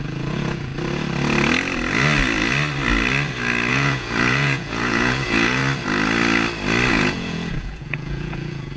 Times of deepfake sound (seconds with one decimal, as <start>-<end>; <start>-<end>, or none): 0.0-0.7; 3.7-5.6; 6.9-8.8